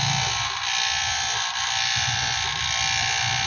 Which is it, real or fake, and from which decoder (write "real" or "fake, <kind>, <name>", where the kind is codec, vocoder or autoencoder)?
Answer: real